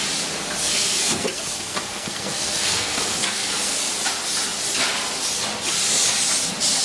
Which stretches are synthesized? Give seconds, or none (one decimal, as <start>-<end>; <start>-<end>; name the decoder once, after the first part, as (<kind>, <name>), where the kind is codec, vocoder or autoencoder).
0.6-3.9 (codec, SNAC)